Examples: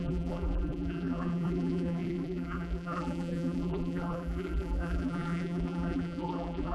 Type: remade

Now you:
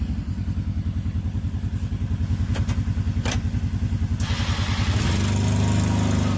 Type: recorded